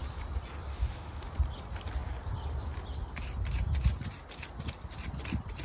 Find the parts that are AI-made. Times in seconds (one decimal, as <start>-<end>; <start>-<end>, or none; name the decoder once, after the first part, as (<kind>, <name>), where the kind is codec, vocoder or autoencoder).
0.7-1.3 (autoencoder, DAC-VAE)